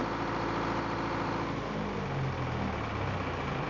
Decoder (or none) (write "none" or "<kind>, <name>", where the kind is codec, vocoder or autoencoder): none